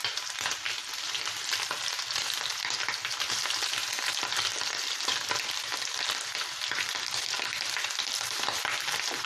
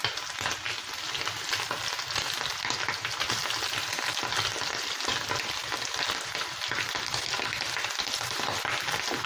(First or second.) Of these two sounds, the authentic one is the second